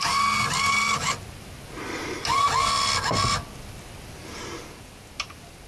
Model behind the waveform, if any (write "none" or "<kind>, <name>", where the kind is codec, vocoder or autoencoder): none